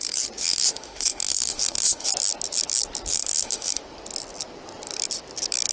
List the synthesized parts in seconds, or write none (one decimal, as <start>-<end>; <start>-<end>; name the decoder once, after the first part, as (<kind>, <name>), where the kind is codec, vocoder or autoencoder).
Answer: 0.4-2.1 (autoencoder, DAC-VAE); 3.1-3.8